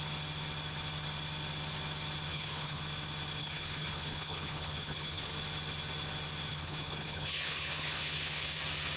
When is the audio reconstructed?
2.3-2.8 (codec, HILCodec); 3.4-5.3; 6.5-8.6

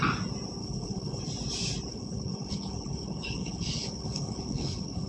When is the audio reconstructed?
0.6-1.2 (codec, HILCodec); 1.9-5.1

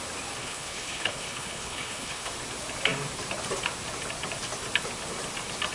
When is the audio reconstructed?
0.4-2.3 (codec, HILCodec)

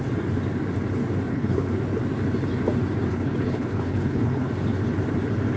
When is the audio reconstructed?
1.3-1.8 (codec, HILCodec); 3.1-4.5

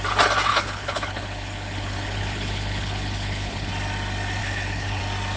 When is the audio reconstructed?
0.5-3.7 (codec, HILCodec); 4.4-5.0

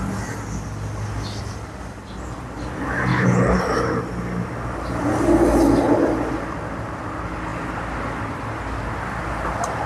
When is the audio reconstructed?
3.1-3.6 (codec, HILCodec)

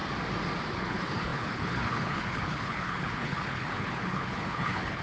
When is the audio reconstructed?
0.7-5.0 (codec, HILCodec)